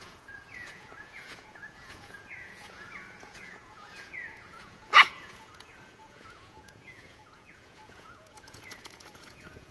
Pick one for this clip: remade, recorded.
remade